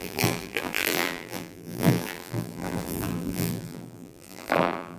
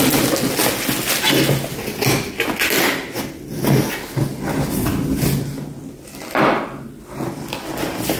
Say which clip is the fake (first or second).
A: first